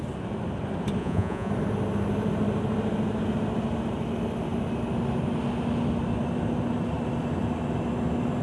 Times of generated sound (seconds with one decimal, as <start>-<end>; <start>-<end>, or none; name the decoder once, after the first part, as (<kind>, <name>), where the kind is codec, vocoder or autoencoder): 1.0-1.5 (vocoder, Vocos)